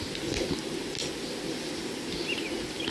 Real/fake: real